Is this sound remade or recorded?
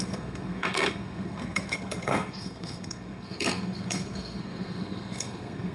remade